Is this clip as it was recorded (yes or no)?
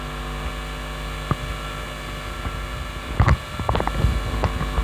yes